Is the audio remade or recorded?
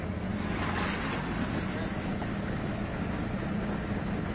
recorded